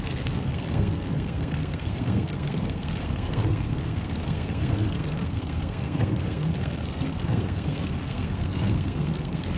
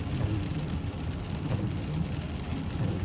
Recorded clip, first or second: second